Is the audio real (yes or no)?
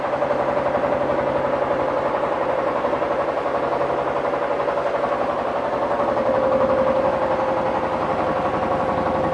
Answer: yes